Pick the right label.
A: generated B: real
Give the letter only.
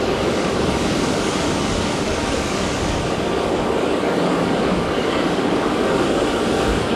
A